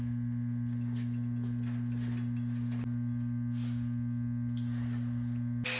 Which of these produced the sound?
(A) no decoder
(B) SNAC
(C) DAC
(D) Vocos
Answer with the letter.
A